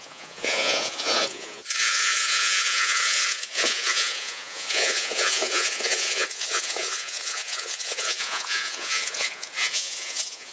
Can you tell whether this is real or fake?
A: fake